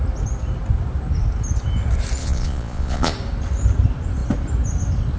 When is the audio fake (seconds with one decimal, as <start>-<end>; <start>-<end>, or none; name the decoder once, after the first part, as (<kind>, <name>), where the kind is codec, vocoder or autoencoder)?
2.2-3.1 (vocoder, Vocos)